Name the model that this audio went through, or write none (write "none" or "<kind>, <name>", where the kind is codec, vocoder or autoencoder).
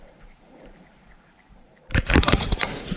vocoder, BigVGAN v2